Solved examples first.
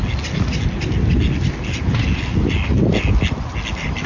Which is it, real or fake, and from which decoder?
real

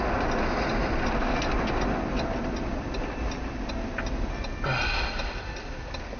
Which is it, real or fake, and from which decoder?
real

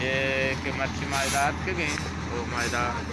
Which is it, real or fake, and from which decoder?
real